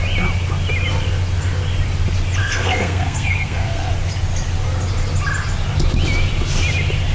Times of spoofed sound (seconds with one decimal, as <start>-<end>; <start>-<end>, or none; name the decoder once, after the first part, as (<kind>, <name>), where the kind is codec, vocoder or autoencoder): 2.4-3.9 (codec, SNAC)